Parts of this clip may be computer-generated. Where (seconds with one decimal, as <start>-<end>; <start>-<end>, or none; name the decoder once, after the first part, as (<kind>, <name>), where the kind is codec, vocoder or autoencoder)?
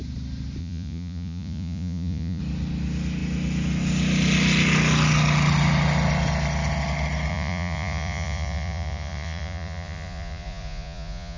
0.6-2.4 (vocoder, Vocos); 7.3-11.4